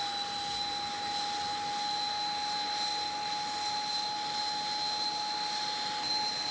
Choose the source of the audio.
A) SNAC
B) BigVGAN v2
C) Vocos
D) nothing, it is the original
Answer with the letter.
D